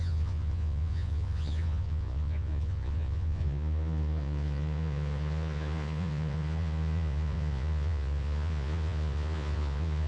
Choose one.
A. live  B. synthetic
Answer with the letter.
B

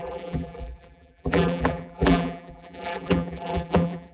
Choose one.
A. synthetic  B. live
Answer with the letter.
A